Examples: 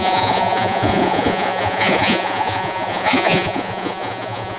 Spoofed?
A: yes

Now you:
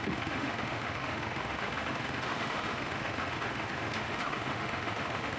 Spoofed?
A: yes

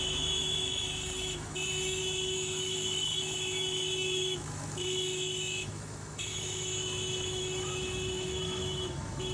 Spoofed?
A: yes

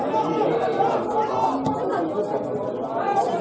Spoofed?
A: no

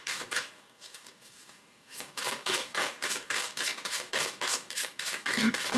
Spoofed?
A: yes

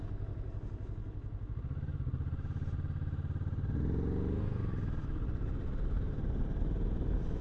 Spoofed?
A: no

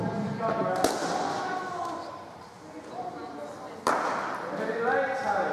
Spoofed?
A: no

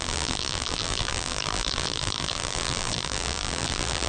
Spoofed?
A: yes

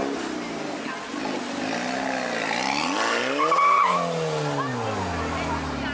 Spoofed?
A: no